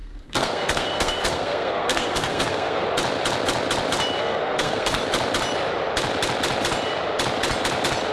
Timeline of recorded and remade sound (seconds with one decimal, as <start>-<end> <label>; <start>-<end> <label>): 0.0-2.8 remade; 2.8-4.2 recorded; 4.2-5.0 remade; 5.0-8.1 recorded